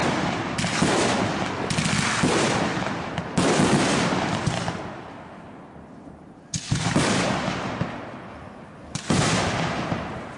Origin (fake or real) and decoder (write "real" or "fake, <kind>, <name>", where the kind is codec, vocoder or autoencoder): real